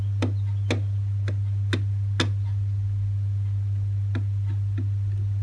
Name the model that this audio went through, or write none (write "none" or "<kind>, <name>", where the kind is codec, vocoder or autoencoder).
none